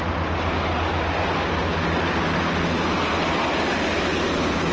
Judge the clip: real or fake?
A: real